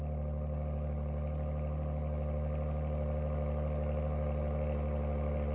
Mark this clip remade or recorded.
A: recorded